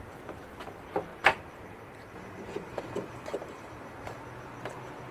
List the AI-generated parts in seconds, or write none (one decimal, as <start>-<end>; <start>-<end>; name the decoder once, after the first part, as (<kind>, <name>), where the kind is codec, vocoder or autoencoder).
1.1-4.2 (vocoder, BigVGAN v2)

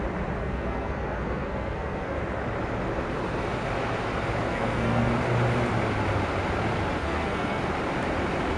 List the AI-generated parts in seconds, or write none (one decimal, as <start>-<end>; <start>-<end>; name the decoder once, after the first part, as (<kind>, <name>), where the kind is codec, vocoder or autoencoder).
0.4-2.2 (codec, SNAC); 4.5-5.1; 7.0-7.6

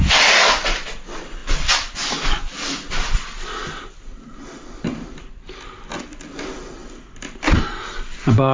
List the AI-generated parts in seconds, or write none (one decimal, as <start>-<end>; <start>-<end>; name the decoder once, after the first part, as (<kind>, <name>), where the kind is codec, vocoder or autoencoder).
1.4-5.9 (vocoder, BigVGAN v2); 6.8-7.6

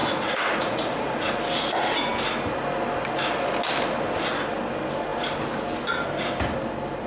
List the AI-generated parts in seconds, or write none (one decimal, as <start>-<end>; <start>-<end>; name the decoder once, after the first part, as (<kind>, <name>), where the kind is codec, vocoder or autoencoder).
0.0-1.3 (vocoder, Vocos)

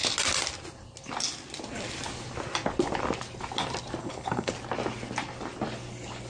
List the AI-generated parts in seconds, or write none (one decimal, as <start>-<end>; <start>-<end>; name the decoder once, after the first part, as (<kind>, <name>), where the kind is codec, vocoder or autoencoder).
4.0-4.5 (codec, HILCodec)

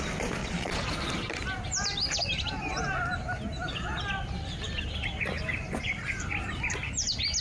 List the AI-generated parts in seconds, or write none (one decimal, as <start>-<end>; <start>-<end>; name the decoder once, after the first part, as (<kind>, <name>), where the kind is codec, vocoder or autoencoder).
0.4-0.9 (vocoder, Vocos)

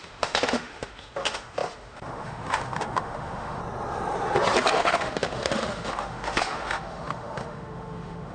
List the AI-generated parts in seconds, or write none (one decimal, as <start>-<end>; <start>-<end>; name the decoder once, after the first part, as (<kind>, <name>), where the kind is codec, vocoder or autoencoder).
0.0-3.6 (autoencoder, DAC-VAE); 4.7-8.3

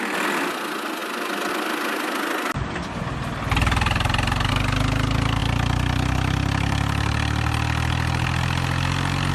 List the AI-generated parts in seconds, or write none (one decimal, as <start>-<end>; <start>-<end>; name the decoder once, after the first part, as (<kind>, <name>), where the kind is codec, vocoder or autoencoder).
none